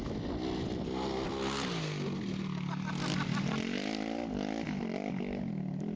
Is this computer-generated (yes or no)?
no